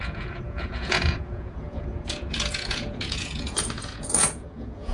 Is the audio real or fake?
fake